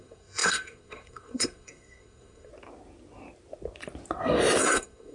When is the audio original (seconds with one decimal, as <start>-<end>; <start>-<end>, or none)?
2.5-4.6